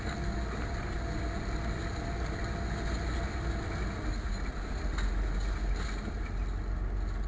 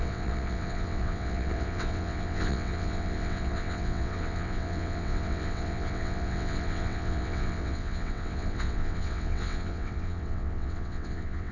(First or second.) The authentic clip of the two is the first